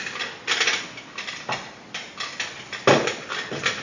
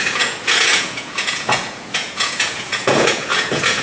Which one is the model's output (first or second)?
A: second